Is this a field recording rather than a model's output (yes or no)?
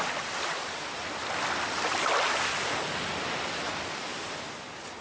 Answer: yes